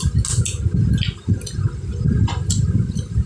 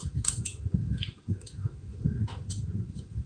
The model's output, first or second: second